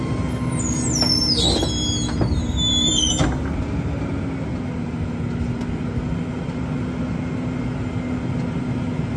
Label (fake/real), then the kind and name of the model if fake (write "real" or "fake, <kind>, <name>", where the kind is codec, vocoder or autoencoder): real